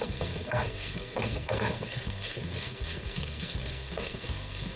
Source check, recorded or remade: remade